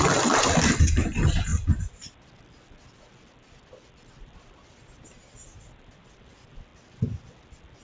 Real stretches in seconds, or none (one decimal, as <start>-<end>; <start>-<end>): 1.5-3.3; 6.7-7.8